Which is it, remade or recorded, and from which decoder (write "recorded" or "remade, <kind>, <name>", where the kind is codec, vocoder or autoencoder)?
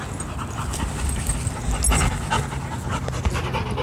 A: recorded